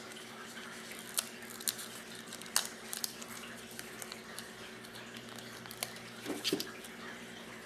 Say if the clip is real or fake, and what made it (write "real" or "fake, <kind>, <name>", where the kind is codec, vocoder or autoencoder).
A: real